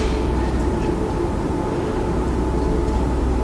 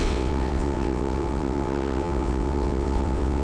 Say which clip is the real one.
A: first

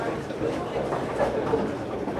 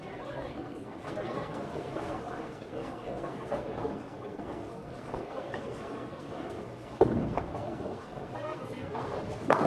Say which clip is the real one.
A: first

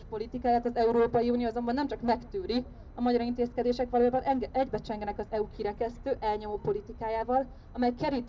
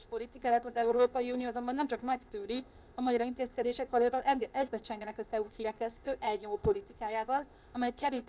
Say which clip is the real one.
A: first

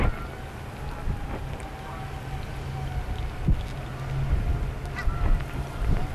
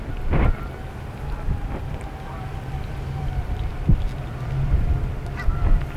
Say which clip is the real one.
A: first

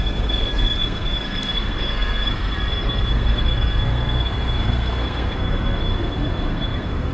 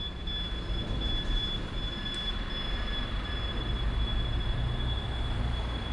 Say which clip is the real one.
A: second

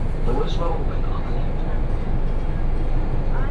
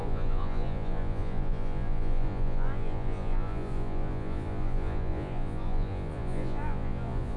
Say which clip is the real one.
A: first